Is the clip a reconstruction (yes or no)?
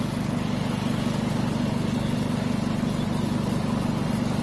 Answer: no